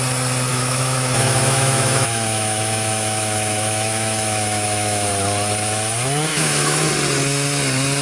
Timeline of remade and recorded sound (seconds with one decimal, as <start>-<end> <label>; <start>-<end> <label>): 0.0-0.5 recorded; 0.5-5.1 remade; 5.1-6.3 recorded; 6.3-6.9 remade; 6.9-8.0 recorded